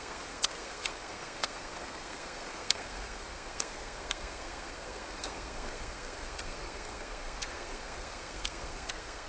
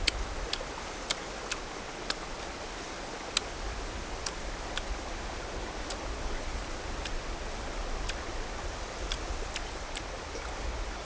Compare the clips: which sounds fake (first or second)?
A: first